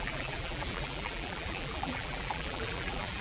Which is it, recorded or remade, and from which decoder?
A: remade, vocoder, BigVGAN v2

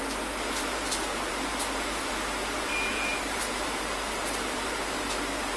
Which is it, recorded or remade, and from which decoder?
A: remade, vocoder, BigVGAN v2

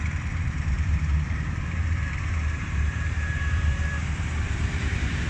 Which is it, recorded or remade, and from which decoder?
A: remade, vocoder, BigVGAN v2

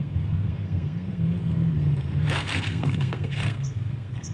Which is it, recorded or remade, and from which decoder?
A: remade, codec, SNAC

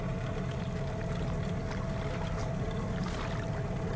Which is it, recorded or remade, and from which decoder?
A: recorded